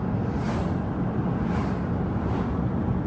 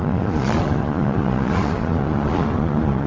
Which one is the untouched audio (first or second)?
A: first